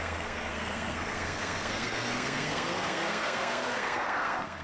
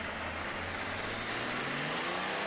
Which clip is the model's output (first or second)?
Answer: first